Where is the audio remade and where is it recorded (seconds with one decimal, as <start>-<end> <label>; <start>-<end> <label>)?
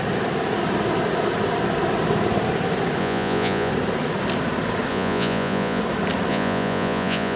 0.0-3.0 recorded; 3.0-3.7 remade; 3.7-4.9 recorded; 4.9-5.8 remade; 5.8-6.3 recorded; 6.3-7.4 remade